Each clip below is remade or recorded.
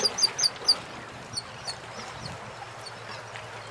recorded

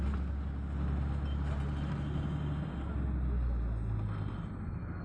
recorded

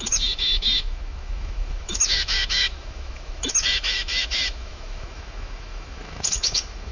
remade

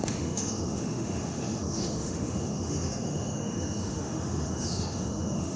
remade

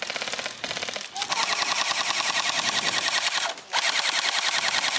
recorded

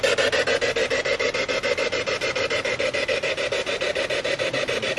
recorded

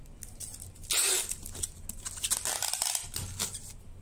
recorded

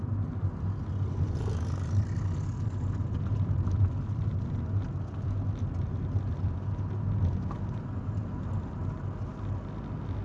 recorded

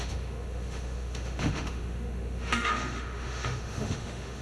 remade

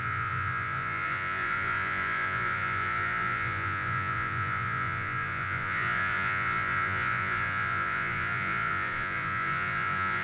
remade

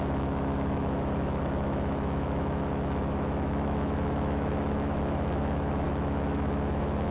remade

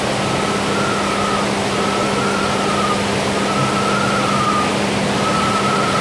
recorded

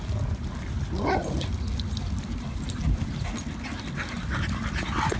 recorded